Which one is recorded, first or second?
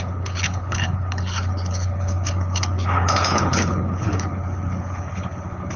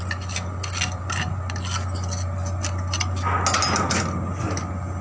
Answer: second